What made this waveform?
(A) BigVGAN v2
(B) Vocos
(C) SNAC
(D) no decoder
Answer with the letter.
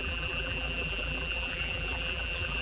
A